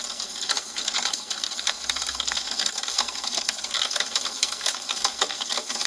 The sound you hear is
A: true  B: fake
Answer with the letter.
B